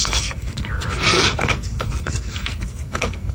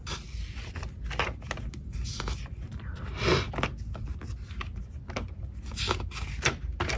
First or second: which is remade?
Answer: first